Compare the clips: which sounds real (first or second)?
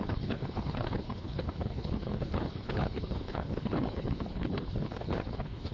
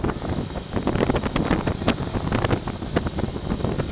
second